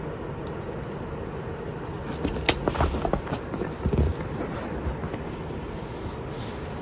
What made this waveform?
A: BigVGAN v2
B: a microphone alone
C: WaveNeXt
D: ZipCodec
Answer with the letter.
B